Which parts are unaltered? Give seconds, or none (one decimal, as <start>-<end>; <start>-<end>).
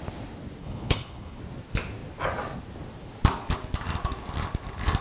0.0-0.6; 1.4-5.0